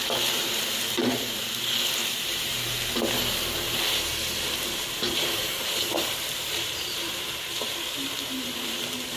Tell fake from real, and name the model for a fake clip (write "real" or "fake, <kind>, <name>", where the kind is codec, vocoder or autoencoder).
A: fake, vocoder, BigVGAN v2